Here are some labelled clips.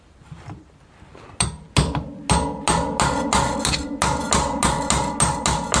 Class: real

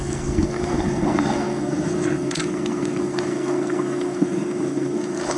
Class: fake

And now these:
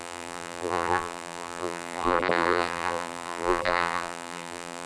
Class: fake